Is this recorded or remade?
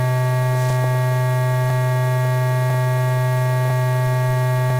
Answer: recorded